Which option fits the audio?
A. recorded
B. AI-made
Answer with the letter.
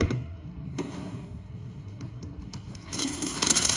B